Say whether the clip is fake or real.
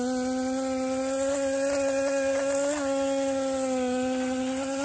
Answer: real